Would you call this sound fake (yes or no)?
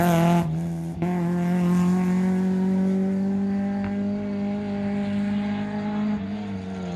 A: no